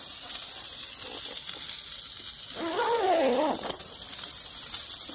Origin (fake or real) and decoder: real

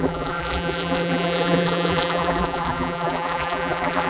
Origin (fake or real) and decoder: fake, vocoder, BigVGAN v2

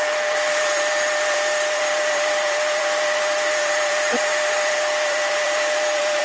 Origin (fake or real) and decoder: fake, vocoder, BigVGAN v2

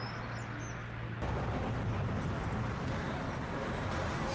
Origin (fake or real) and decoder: real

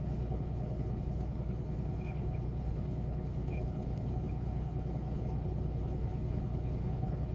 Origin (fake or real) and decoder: fake, codec, HILCodec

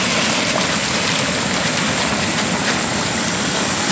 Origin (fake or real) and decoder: real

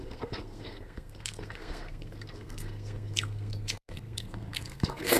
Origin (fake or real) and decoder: fake, codec, SNAC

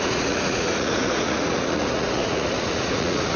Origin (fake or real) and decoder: fake, vocoder, Vocos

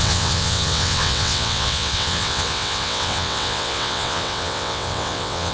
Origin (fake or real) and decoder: fake, vocoder, WaveNeXt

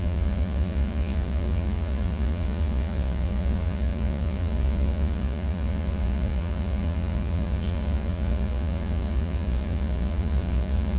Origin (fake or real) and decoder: fake, vocoder, Vocos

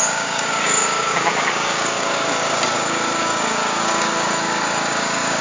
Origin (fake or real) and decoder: fake, codec, DAC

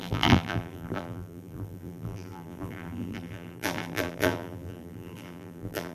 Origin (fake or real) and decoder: fake, vocoder, BigVGAN v2